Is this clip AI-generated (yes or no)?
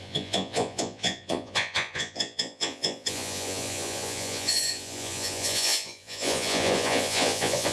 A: yes